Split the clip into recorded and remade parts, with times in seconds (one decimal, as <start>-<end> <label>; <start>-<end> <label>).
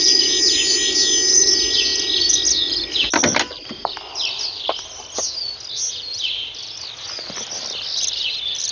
0.0-8.7 recorded